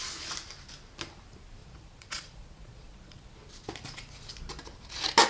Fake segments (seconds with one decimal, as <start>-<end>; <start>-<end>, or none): 1.6-3.4